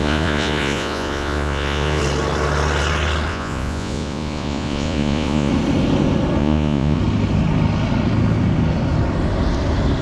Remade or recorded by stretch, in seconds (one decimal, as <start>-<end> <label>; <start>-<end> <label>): 0.0-2.0 remade; 2.0-3.3 recorded; 3.3-5.5 remade; 5.5-6.4 recorded; 6.4-7.0 remade; 7.0-10.0 recorded

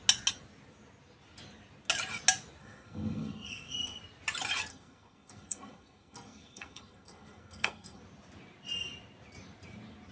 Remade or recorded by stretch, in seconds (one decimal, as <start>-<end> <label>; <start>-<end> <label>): 0.0-2.6 recorded; 2.6-4.0 remade; 4.0-4.7 recorded; 4.7-8.0 remade; 8.0-10.1 recorded

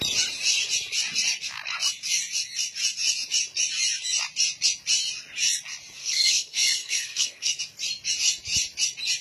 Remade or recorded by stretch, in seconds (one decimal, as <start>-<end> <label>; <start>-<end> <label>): 0.0-6.0 recorded; 6.0-7.6 remade; 7.6-9.2 recorded

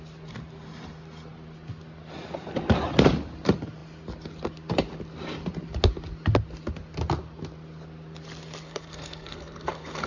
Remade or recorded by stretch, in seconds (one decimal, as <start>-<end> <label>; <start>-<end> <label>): 0.0-8.6 recorded; 8.6-10.1 remade